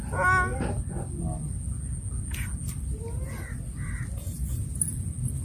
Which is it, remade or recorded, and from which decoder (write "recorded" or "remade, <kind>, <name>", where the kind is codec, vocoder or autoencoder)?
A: recorded